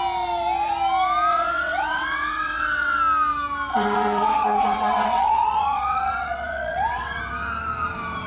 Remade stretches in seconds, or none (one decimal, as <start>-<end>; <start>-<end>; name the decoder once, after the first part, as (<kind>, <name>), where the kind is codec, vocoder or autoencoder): 1.3-3.0 (vocoder, WaveNeXt); 3.7-7.2